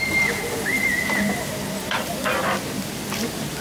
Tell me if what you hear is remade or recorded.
recorded